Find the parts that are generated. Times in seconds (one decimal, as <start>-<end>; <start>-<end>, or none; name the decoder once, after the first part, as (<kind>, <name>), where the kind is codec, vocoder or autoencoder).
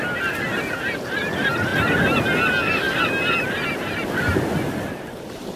none